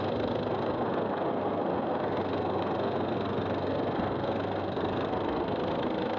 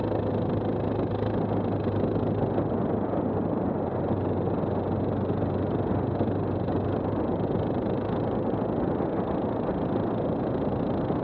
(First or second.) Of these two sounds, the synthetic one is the first